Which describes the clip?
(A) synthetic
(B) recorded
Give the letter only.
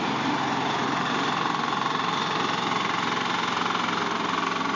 B